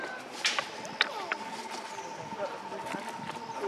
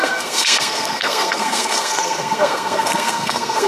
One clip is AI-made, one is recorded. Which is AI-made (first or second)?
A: second